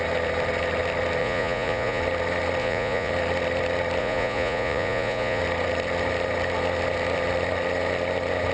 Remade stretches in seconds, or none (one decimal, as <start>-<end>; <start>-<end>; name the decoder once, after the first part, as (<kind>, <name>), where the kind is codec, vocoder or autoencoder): 1.2-2.0 (vocoder, Vocos); 2.6-3.1; 4.0-5.4